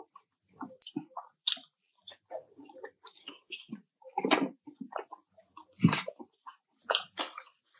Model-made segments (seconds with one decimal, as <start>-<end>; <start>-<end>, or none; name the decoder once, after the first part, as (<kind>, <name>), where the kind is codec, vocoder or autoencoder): 3.2-3.7 (codec, SNAC)